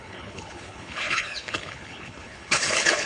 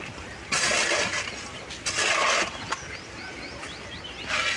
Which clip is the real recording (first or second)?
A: second